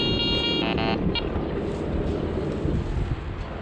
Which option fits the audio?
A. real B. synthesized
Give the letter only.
A